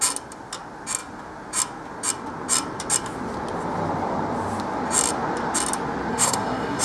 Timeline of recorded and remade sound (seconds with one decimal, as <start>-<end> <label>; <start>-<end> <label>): 0.0-6.1 recorded; 6.1-6.8 remade